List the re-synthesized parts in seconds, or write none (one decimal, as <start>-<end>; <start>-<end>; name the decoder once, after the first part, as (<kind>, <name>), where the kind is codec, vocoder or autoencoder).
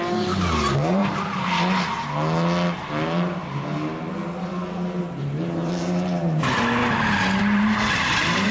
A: 0.0-1.0 (vocoder, BigVGAN v2); 5.0-6.8; 7.4-8.5